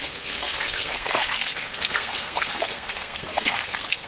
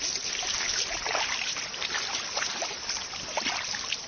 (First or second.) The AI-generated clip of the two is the first